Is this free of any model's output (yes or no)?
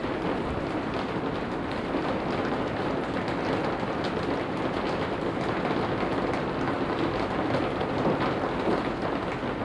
yes